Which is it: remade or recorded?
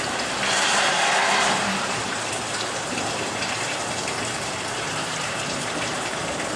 remade